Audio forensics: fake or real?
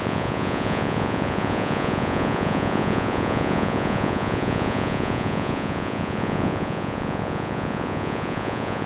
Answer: fake